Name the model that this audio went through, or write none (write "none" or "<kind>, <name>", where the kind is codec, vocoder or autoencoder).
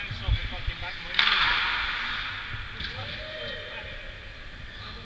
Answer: none